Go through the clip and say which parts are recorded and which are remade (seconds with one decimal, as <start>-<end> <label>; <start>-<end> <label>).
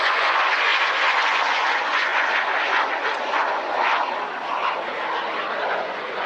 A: 0.0-4.0 remade; 4.0-5.7 recorded; 5.7-6.3 remade